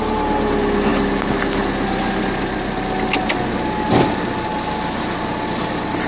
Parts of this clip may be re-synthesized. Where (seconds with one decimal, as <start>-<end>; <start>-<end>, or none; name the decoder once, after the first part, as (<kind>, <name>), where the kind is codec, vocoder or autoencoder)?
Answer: none